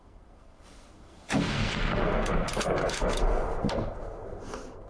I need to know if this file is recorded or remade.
remade